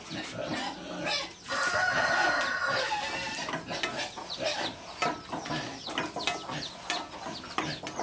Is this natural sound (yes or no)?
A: yes